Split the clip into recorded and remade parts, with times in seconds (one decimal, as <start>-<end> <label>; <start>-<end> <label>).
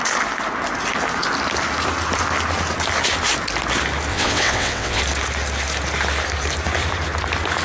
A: 0.0-4.1 recorded; 4.1-5.0 remade; 5.0-7.6 recorded